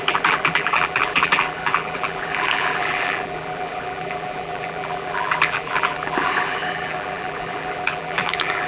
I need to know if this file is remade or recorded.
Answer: remade